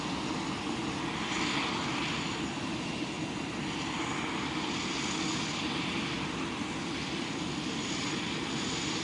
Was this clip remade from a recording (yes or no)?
no